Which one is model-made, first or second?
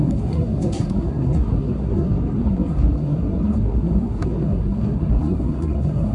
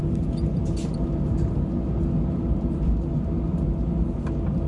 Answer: first